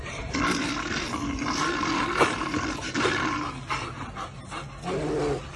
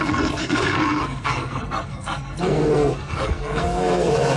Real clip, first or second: first